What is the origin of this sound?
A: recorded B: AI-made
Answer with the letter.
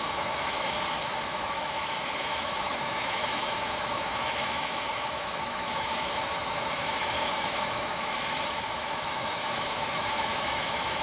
B